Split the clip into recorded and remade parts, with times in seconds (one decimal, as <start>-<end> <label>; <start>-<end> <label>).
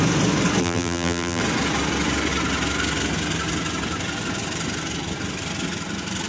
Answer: 0.0-0.6 recorded; 0.6-1.4 remade; 1.4-6.3 recorded